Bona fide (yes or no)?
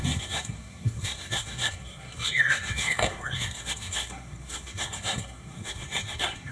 no